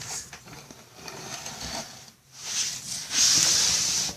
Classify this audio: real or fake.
real